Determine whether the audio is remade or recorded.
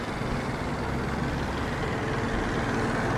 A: recorded